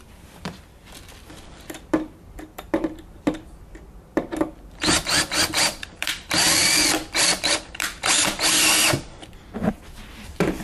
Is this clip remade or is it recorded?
remade